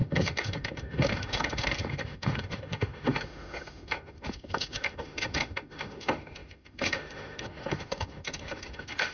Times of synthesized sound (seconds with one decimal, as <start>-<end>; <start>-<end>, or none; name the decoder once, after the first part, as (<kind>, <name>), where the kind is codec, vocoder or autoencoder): 0.0-9.1 (autoencoder, DAC-VAE)